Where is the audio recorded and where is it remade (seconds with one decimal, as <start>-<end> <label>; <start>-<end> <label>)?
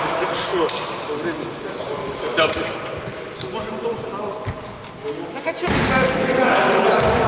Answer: 0.0-7.3 recorded